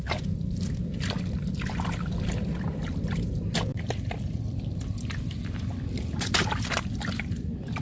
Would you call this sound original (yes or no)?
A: no